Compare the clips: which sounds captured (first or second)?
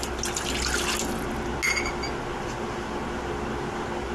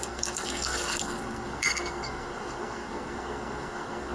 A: first